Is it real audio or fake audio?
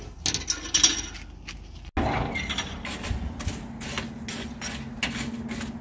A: real